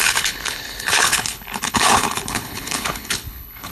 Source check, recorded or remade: remade